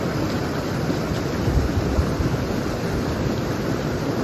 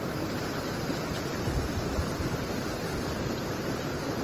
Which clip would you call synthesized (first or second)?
second